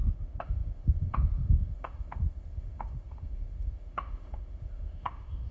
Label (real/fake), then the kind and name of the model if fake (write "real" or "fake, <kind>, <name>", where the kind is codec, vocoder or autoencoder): fake, autoencoder, DAC-VAE